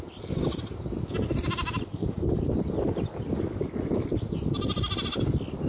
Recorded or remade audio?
recorded